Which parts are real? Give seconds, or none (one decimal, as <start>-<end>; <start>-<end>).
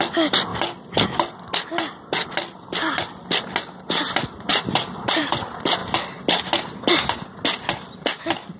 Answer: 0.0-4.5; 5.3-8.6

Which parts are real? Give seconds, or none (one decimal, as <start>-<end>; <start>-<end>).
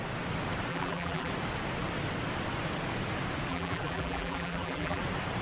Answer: 0.0-0.7; 1.3-3.5; 5.0-5.4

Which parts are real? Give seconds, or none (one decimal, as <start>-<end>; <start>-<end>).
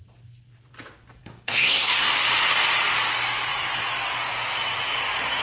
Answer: 0.0-1.2; 2.1-5.4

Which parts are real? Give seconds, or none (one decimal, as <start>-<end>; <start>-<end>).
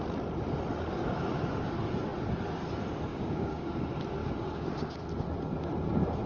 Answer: 0.0-3.1; 3.8-4.2; 4.9-6.3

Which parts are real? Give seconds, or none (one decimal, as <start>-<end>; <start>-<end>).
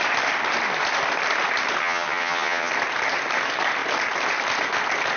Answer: 0.0-1.8; 2.7-5.2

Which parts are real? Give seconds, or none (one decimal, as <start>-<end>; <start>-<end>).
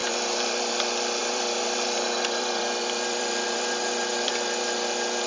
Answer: 0.7-1.2; 4.3-5.3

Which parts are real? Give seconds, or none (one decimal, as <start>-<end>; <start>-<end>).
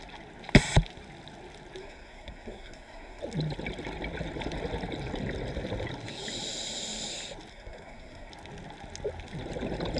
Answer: 0.0-1.8; 3.2-7.5; 8.3-10.0